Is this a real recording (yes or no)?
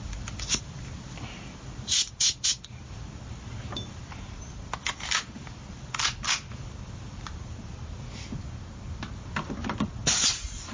no